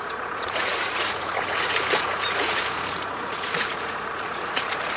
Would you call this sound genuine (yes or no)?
no